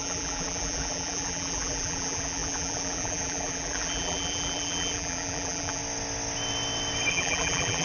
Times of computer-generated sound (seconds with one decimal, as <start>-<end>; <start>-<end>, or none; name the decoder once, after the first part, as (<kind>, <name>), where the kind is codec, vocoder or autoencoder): 0.0-5.8 (vocoder, BigVGAN v2); 7.1-7.8